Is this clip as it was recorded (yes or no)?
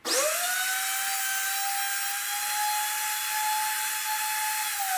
yes